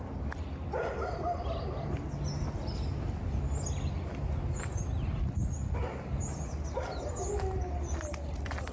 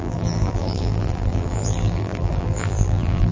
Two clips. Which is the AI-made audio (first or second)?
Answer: second